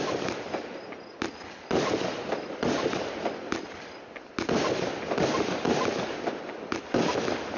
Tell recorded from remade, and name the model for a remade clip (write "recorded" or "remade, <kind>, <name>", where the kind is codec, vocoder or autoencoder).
recorded